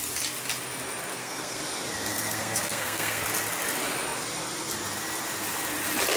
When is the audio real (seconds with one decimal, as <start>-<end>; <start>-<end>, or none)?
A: 0.0-1.1; 1.6-2.1; 3.2-6.2